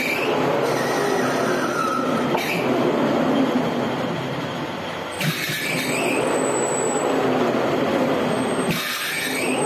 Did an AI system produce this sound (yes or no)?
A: no